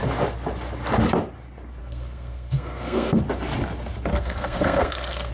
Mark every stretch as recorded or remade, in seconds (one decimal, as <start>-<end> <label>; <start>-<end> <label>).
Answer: 0.0-1.8 recorded; 1.8-3.2 remade; 3.2-4.1 recorded; 4.1-5.3 remade